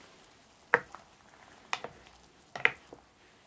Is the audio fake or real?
real